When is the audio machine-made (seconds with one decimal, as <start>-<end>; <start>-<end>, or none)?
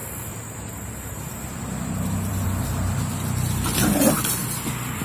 0.0-3.0